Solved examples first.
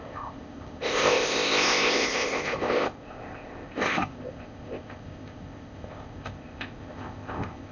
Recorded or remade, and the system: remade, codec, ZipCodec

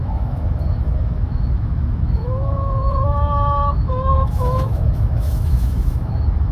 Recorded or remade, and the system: remade, autoencoder, DAC-VAE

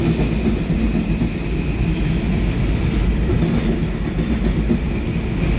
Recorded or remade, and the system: recorded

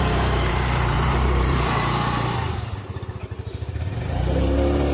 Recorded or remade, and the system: remade, vocoder, BigVGAN v2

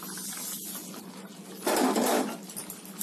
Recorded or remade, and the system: recorded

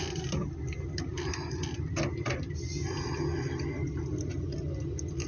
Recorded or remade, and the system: recorded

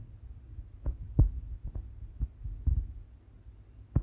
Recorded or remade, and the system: recorded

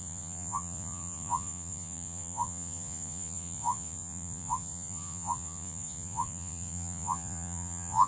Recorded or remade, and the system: remade, vocoder, Vocos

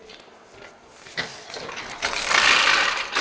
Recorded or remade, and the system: recorded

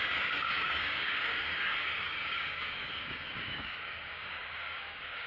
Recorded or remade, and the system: remade, codec, DAC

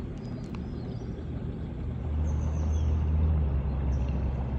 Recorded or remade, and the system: recorded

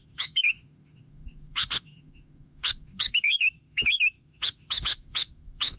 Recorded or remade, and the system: remade, autoencoder, DAC-VAE